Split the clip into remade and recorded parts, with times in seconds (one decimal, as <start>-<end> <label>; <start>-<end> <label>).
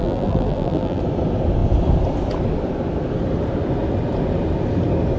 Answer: 0.0-1.0 remade; 1.0-5.2 recorded